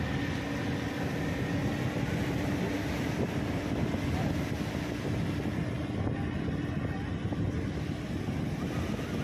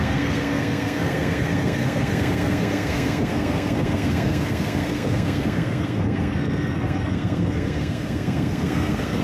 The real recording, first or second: first